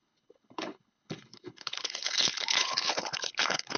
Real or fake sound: fake